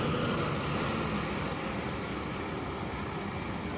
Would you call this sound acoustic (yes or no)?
yes